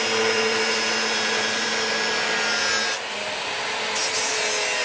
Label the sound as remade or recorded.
recorded